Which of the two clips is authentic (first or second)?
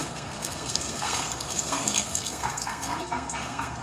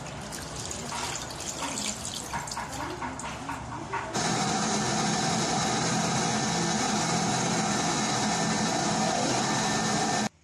second